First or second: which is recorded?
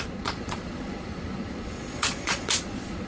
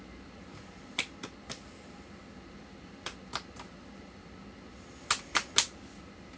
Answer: second